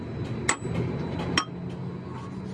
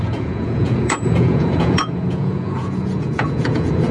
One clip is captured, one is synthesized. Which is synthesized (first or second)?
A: second